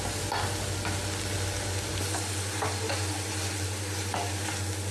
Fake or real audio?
real